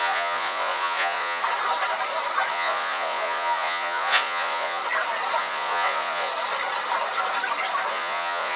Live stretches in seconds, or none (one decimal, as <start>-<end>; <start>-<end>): 1.4-2.5; 4.8-5.4; 6.3-7.9